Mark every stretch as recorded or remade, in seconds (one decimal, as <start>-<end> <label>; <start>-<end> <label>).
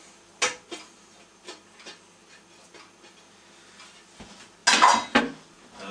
0.0-5.9 recorded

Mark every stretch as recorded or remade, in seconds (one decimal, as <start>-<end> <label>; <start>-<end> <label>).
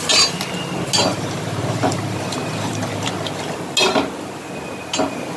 0.0-1.1 recorded; 1.1-3.1 remade; 3.1-5.4 recorded